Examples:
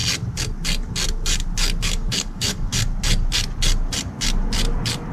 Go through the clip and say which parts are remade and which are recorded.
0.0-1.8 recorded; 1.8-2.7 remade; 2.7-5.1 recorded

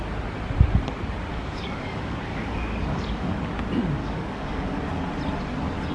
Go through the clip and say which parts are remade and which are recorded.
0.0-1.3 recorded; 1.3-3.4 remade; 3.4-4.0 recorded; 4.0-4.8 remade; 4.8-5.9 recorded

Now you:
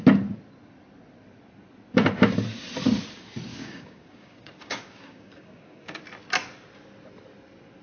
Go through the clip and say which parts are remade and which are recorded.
0.0-3.5 recorded; 3.5-6.0 remade; 6.0-7.8 recorded

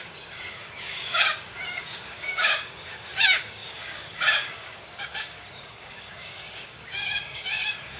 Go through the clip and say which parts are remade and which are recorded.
0.0-8.0 remade